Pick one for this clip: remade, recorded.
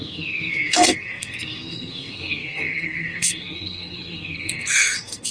remade